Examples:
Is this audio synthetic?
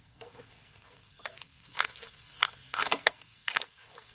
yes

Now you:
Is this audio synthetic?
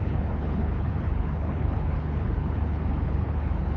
yes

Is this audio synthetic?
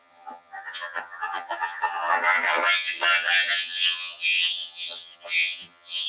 yes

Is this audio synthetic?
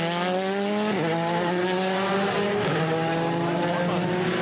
no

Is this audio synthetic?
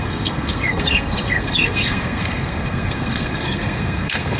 yes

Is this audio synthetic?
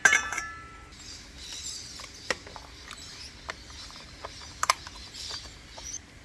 no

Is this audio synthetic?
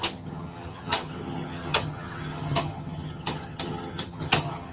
yes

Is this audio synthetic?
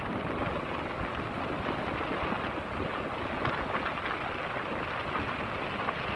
no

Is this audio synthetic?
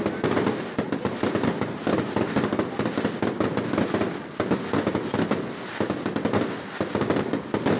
no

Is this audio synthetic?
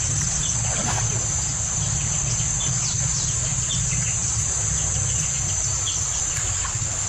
no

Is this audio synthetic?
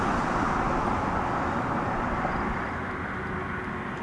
no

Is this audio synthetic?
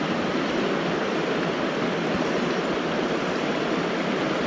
no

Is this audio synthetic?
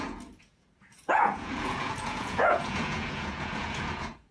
yes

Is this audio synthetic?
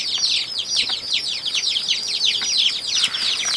no